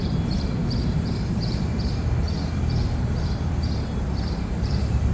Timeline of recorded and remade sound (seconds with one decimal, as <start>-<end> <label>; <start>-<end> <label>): 0.0-5.1 remade

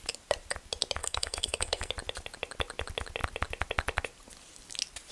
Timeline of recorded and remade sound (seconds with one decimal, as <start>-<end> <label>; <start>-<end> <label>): 0.0-1.0 recorded; 1.0-1.9 remade; 1.9-5.1 recorded

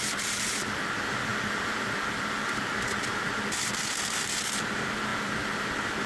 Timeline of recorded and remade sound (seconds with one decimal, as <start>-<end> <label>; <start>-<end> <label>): 0.0-6.1 recorded